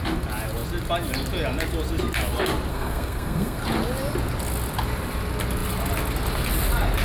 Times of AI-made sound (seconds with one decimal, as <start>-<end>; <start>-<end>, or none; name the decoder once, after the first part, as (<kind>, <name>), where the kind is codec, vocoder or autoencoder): 2.7-3.6 (codec, SNAC)